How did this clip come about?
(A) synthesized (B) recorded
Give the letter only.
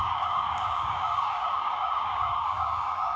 A